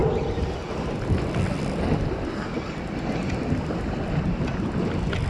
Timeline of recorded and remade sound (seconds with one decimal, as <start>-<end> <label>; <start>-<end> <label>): 0.0-5.3 recorded